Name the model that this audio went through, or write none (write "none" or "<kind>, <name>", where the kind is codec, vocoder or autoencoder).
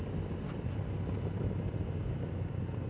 none